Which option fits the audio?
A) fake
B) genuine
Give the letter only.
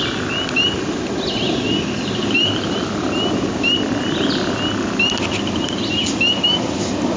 B